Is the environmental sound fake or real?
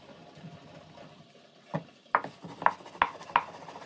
real